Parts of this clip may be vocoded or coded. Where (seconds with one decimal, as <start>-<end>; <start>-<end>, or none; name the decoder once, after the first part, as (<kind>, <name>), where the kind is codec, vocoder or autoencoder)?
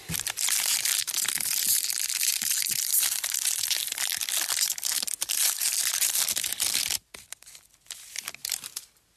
none